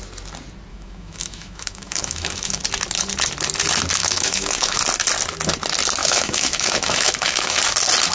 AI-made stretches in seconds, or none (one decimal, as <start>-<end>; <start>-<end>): 0.7-2.6; 4.0-4.8; 6.0-7.6